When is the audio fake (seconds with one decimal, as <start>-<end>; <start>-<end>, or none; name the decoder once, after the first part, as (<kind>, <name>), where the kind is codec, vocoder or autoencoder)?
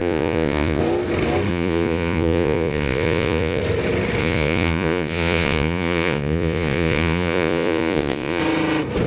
0.0-0.8 (vocoder, Vocos); 1.5-3.6; 4.2-8.4